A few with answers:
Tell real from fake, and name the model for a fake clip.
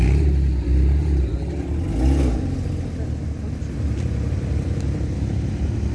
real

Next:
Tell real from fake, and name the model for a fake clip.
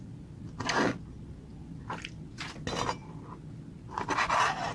real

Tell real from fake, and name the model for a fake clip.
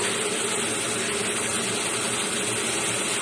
real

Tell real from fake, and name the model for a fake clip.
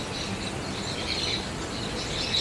real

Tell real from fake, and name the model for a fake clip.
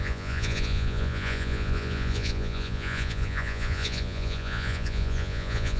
fake, vocoder, Vocos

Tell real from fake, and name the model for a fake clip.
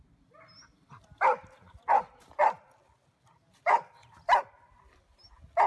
real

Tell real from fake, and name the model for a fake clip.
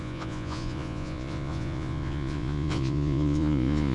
fake, vocoder, Vocos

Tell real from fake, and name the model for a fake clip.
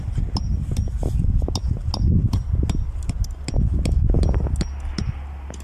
real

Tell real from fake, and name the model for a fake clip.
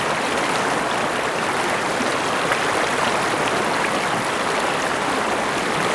real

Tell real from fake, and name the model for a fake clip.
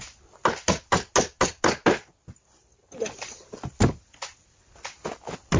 real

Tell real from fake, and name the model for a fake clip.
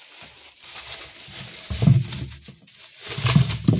real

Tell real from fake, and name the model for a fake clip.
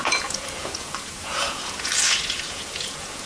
fake, vocoder, Vocos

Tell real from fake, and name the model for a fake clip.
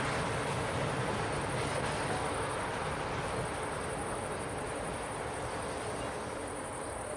real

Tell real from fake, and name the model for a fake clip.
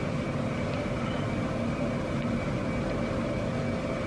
real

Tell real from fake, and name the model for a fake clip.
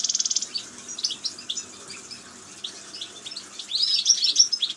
real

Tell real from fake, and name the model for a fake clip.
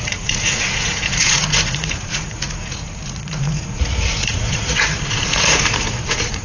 fake, vocoder, Vocos